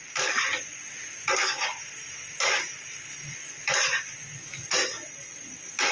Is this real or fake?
real